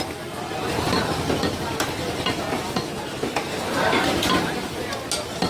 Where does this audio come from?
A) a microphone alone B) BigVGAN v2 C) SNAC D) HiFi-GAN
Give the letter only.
A